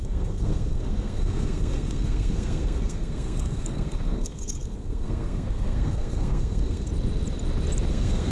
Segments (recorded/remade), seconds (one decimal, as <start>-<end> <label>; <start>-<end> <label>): 0.0-6.9 remade; 6.9-7.9 recorded; 7.9-8.3 remade